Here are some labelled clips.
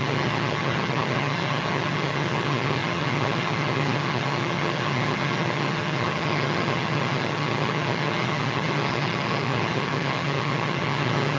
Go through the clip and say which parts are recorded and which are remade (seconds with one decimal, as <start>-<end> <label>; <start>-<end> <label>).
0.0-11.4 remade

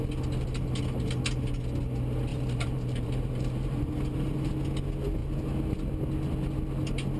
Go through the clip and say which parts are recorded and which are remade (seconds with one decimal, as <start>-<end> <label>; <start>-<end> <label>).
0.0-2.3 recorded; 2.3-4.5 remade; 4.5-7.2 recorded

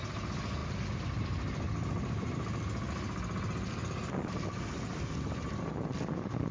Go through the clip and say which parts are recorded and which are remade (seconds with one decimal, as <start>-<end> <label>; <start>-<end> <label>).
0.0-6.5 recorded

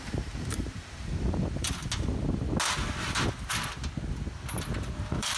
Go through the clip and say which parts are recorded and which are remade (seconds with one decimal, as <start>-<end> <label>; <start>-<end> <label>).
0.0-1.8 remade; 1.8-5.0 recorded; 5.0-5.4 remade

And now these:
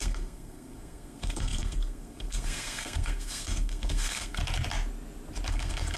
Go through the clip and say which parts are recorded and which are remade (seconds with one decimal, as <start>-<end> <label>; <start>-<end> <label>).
0.0-4.4 remade; 4.4-5.5 recorded; 5.5-6.0 remade

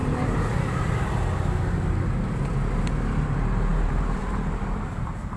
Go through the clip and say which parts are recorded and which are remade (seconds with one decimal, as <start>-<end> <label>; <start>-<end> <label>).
0.0-1.9 remade; 1.9-3.7 recorded; 3.7-5.0 remade; 5.0-5.4 recorded